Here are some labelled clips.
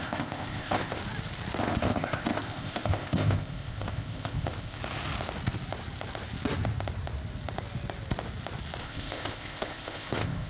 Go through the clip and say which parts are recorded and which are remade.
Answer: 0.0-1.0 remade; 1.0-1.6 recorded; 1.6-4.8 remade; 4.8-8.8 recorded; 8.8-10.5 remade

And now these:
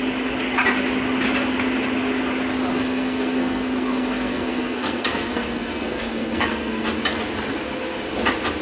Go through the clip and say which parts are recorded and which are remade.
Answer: 0.0-2.7 recorded; 2.7-6.9 remade; 6.9-8.6 recorded

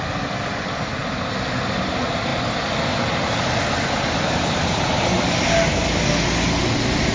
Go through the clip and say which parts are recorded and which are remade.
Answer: 0.0-7.1 recorded

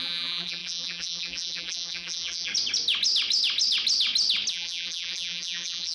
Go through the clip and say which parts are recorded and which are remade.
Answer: 0.0-2.5 remade; 2.5-4.5 recorded; 4.5-5.9 remade

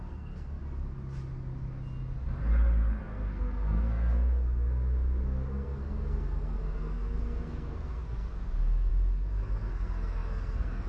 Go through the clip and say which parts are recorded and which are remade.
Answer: 0.0-0.6 remade; 0.6-3.0 recorded; 3.0-10.9 remade

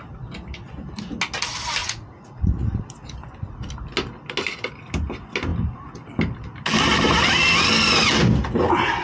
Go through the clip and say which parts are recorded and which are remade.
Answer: 0.0-1.8 recorded; 1.8-2.8 remade; 2.8-9.0 recorded